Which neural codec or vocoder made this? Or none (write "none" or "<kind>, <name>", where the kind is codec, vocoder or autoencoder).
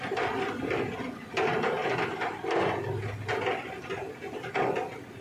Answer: none